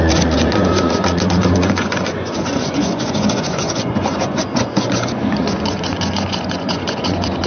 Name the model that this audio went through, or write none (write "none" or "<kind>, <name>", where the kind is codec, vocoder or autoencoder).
vocoder, Vocos